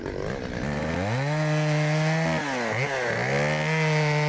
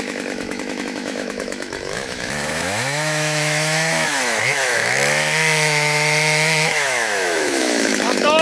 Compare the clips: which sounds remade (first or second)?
second